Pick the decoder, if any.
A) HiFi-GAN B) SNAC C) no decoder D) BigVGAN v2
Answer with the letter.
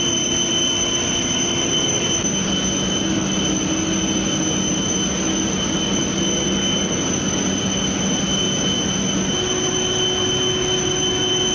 C